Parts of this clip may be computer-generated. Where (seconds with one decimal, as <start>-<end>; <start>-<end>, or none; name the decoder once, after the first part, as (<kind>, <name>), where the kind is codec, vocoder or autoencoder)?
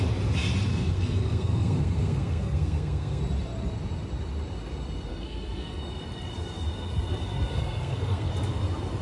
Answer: 0.7-3.2 (codec, SNAC); 5.1-5.8; 7.5-8.3